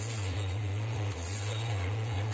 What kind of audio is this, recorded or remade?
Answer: remade